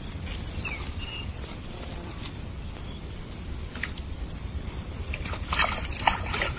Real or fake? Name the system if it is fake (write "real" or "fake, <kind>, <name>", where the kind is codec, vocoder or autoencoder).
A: fake, vocoder, BigVGAN v2